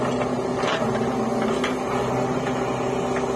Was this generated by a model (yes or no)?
no